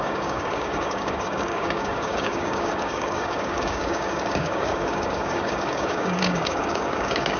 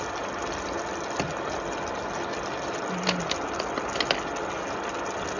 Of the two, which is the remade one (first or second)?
first